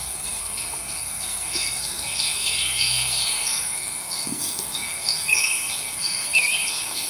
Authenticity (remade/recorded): remade